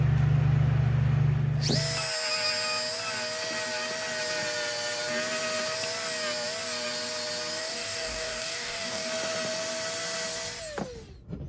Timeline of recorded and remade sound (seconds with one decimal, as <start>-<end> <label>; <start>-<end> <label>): 0.0-7.6 recorded; 7.6-9.1 remade; 9.1-11.5 recorded